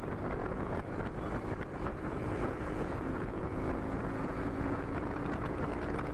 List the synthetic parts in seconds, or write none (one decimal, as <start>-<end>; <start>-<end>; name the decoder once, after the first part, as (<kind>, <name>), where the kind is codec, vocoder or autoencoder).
0.4-1.0 (vocoder, Vocos); 1.9-5.6